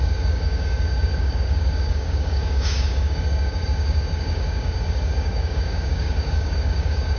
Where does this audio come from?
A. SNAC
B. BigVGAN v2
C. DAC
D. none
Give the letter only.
C